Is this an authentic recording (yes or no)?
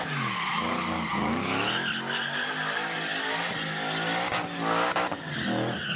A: yes